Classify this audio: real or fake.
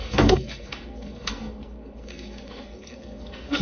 fake